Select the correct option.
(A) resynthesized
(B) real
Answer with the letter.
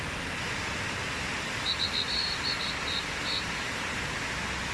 B